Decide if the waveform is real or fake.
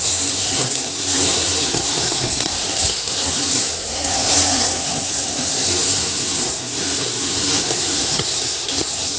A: fake